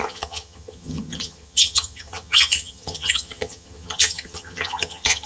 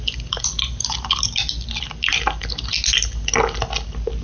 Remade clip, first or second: first